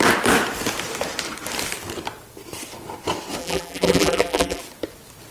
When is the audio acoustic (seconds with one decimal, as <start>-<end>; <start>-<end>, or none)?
0.0-3.4; 4.6-5.3